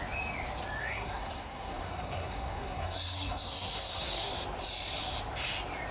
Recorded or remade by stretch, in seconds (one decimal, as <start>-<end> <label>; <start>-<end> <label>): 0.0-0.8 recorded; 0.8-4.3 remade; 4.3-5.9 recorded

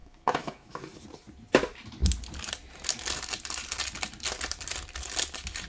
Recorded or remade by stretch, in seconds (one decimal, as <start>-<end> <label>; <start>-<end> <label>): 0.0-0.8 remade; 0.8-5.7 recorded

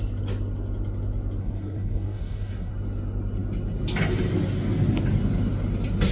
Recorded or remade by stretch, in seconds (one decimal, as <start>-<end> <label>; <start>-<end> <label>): 0.0-1.4 recorded; 1.4-2.7 remade; 2.7-6.1 recorded

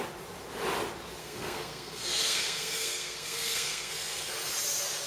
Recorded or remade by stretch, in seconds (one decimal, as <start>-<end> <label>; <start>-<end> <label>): 0.0-1.2 recorded; 1.2-4.3 remade; 4.3-5.1 recorded